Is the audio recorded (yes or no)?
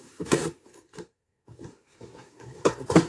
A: no